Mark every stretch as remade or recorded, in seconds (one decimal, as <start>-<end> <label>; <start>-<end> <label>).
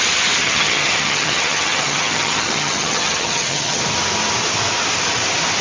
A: 0.0-0.4 recorded; 0.4-3.8 remade; 3.8-5.6 recorded